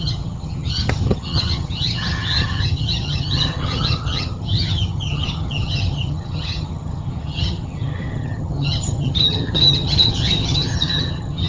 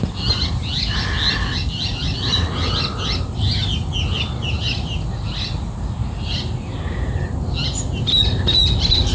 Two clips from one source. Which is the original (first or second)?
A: second